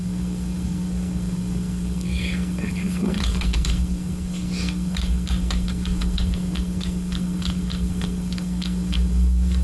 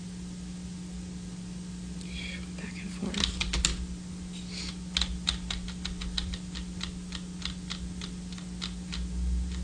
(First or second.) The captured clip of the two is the second